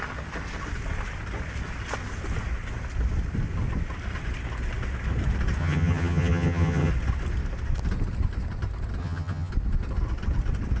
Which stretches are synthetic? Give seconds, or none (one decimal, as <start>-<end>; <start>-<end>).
5.6-6.9; 9.0-9.5